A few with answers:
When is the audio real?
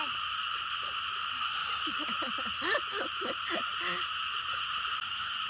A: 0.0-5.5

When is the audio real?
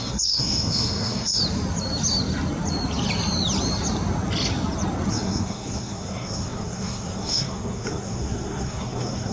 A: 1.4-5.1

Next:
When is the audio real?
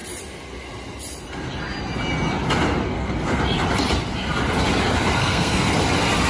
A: 0.0-2.8; 3.4-5.2; 5.7-6.3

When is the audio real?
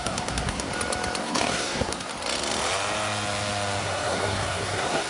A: 0.7-1.2; 2.1-3.8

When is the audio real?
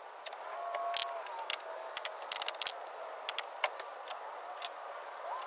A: 0.0-5.5